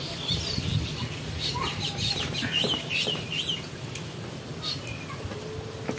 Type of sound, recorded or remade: recorded